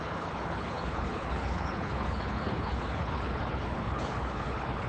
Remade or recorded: remade